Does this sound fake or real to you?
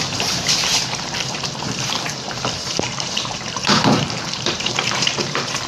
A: fake